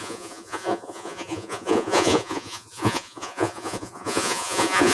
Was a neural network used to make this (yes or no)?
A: yes